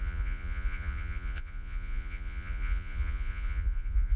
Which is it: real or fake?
fake